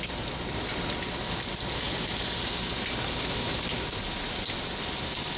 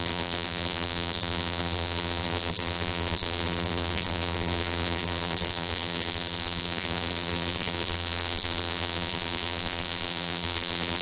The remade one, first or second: second